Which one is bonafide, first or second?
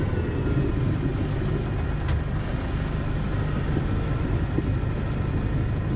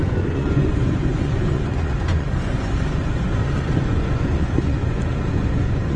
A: first